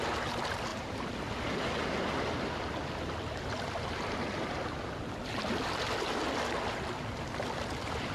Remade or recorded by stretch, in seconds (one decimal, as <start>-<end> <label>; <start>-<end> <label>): 0.0-0.7 recorded; 0.7-1.2 remade; 1.2-8.1 recorded